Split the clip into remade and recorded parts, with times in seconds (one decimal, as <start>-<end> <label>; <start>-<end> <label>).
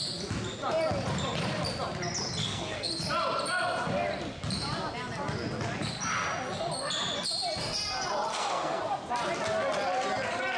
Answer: 0.0-2.4 recorded; 2.4-2.9 remade; 2.9-8.3 recorded; 8.3-8.8 remade; 8.8-10.6 recorded